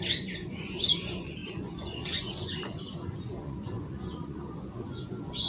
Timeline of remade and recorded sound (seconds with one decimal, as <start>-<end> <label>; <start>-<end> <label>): 0.0-5.5 remade